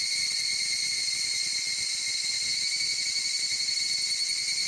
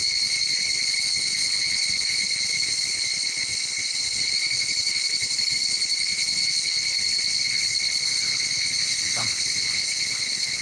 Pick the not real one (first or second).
second